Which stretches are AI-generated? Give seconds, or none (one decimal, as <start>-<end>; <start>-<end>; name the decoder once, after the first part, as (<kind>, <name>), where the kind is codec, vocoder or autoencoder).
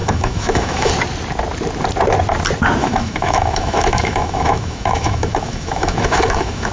0.0-0.9 (autoencoder, DAC-VAE); 2.8-6.7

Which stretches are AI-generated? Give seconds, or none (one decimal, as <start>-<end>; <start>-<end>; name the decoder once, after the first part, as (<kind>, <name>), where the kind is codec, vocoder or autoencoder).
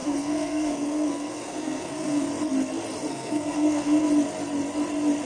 0.0-2.3 (codec, SNAC); 3.1-4.1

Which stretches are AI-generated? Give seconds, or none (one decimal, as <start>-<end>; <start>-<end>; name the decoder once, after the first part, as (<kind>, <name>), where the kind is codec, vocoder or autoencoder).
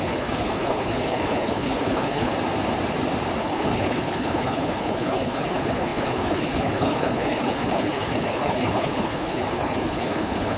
0.0-2.3 (codec, HILCodec); 3.4-10.6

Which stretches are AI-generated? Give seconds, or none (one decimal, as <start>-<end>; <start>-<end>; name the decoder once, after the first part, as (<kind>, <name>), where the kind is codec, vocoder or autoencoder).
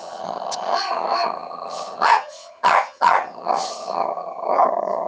0.0-5.1 (vocoder, HiFi-GAN)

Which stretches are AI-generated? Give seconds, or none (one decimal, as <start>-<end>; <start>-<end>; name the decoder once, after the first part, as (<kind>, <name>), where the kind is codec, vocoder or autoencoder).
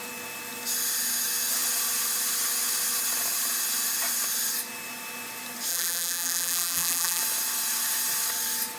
5.7-7.2 (vocoder, BigVGAN v2)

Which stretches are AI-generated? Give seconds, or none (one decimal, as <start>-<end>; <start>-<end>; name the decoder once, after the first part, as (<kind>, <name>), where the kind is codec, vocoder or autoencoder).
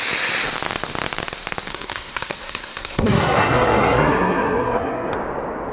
1.7-5.1 (codec, SNAC)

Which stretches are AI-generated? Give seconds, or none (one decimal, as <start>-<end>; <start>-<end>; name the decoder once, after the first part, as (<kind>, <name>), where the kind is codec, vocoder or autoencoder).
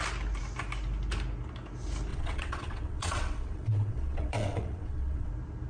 2.1-5.3 (vocoder, WaveNeXt)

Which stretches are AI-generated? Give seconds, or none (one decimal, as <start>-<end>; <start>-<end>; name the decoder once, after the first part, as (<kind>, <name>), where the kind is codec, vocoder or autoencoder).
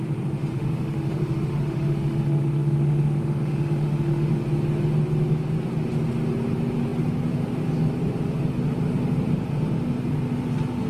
0.5-4.3 (autoencoder, DAC-VAE)